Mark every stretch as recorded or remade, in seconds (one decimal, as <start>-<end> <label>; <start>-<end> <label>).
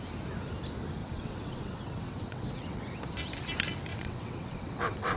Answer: 0.0-1.0 recorded; 1.0-3.0 remade; 3.0-3.9 recorded; 3.9-5.2 remade